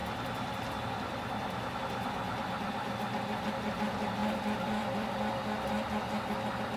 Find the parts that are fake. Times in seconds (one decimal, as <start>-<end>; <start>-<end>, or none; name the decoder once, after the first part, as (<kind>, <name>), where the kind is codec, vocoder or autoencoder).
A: 0.0-1.8 (vocoder, BigVGAN v2); 4.2-5.3